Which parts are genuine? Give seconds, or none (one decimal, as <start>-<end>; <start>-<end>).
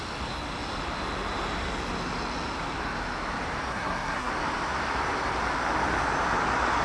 0.0-3.7; 4.3-6.8